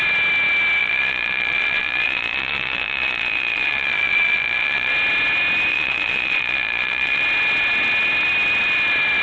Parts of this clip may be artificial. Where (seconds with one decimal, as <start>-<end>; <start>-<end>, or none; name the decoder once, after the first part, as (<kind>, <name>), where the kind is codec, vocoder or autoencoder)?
0.8-4.9 (vocoder, Vocos); 5.7-7.2